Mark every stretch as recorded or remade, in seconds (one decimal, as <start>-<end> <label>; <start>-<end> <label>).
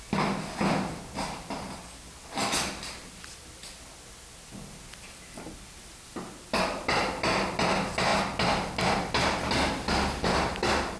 0.0-11.0 recorded